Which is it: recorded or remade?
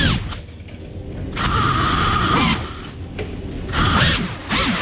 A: recorded